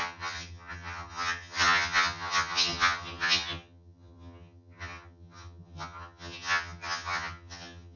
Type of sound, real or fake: fake